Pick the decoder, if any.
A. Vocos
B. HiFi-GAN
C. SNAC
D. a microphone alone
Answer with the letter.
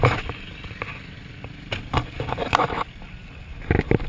D